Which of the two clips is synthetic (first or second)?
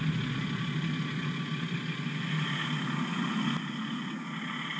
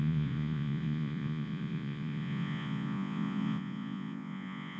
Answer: second